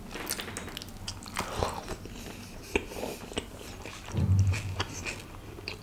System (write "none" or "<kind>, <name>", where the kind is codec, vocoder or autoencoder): none